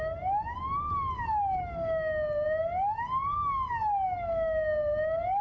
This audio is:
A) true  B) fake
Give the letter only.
A